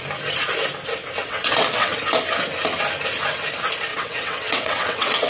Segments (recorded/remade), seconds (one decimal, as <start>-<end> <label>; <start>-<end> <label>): 0.0-1.2 recorded; 1.2-2.0 remade; 2.0-3.9 recorded; 3.9-5.3 remade